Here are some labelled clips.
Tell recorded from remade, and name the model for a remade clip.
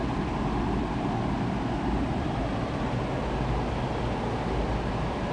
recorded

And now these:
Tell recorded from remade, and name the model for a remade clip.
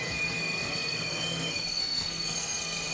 remade, codec, SNAC